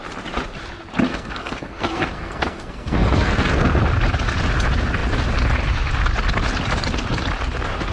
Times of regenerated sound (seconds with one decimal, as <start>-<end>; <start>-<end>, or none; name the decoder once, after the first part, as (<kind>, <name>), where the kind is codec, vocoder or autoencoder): 1.1-3.8 (codec, SNAC)